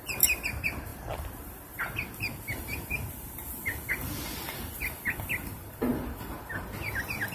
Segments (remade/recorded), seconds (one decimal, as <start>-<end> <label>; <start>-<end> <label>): 0.0-7.3 recorded